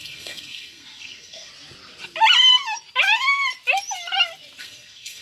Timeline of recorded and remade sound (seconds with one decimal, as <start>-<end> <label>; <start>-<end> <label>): 0.0-1.5 remade; 1.5-4.6 recorded; 4.6-5.2 remade